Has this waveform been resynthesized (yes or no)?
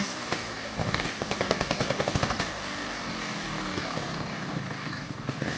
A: yes